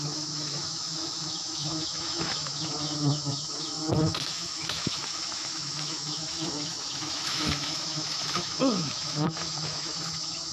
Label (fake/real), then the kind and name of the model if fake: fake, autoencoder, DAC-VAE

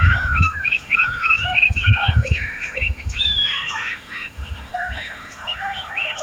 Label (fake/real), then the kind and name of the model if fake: fake, autoencoder, DAC-VAE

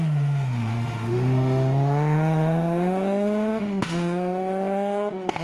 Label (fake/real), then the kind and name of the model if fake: fake, autoencoder, DAC-VAE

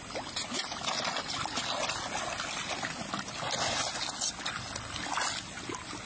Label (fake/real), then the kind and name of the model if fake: real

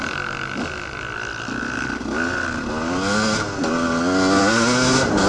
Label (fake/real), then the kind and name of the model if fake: real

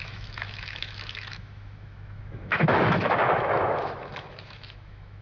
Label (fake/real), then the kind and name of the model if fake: fake, autoencoder, DAC-VAE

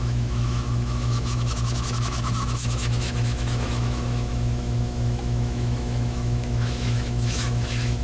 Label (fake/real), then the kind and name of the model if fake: fake, autoencoder, DAC-VAE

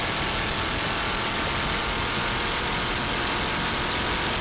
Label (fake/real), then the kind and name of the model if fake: real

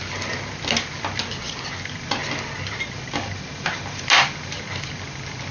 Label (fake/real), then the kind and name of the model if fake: real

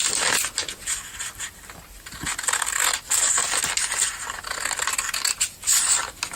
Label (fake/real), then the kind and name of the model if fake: real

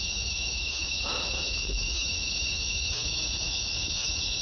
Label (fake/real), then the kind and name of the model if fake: fake, autoencoder, DAC-VAE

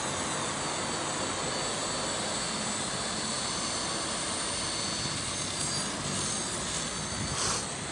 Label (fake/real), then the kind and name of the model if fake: real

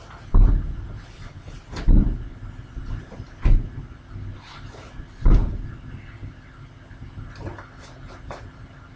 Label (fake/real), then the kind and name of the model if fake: real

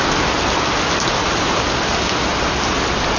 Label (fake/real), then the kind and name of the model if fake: real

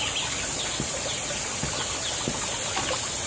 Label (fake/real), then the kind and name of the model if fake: real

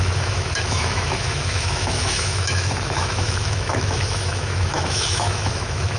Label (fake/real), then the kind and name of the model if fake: fake, autoencoder, DAC-VAE